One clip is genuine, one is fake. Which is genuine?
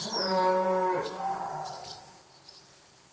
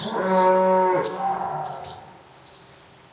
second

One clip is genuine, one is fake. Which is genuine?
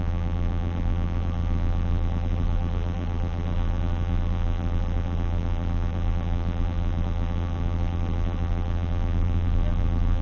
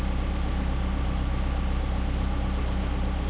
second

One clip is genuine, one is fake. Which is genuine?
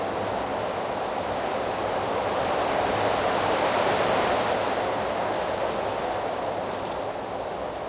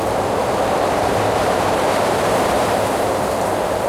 first